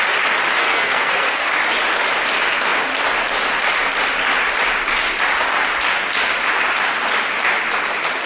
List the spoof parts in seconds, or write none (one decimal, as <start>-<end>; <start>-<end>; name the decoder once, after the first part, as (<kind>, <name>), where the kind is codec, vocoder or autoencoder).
0.6-1.5 (codec, SNAC)